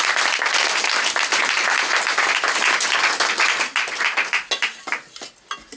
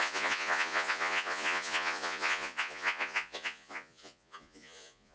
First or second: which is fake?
second